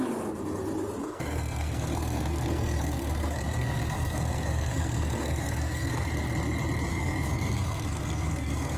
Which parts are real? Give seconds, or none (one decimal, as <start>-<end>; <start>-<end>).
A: 0.0-1.0; 6.1-6.9